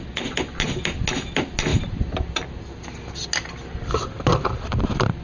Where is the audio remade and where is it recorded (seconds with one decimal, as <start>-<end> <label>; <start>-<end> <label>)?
0.0-5.2 recorded